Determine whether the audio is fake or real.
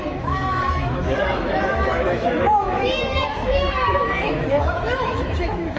fake